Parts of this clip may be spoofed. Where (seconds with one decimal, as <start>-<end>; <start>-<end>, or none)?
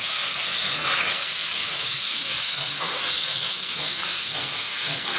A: 0.0-5.2